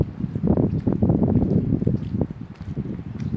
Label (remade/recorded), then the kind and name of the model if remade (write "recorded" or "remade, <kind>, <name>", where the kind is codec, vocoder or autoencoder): remade, vocoder, BigVGAN v2